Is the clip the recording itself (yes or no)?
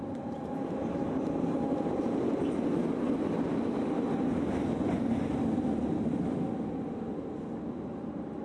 yes